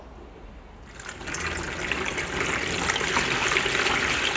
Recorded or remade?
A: recorded